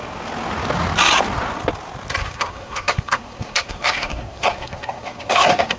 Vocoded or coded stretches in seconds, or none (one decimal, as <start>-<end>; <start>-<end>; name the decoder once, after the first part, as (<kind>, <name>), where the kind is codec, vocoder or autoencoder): 2.2-5.8 (codec, SNAC)